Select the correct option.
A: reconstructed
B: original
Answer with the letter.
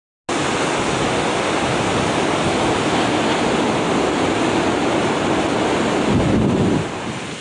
B